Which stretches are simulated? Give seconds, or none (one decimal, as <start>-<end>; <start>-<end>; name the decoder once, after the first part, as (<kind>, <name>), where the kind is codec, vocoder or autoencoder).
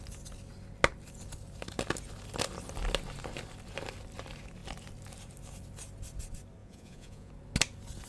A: 6.6-7.3 (vocoder, Vocos)